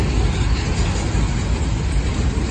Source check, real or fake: real